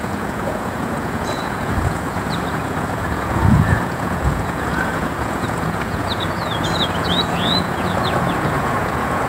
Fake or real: fake